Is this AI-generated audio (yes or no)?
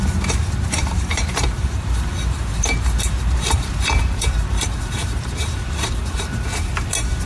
yes